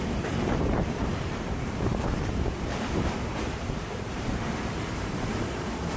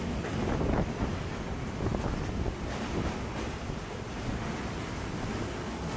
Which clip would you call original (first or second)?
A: second